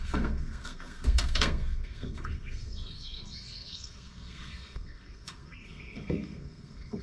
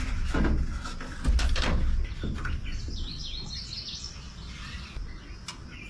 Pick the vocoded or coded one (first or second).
first